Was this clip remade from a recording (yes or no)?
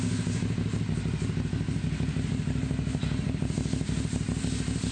no